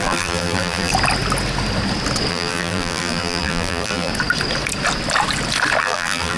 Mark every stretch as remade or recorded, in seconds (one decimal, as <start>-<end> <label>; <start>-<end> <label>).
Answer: 0.0-0.9 remade; 0.9-2.3 recorded; 2.3-4.1 remade; 4.1-5.8 recorded; 5.8-6.4 remade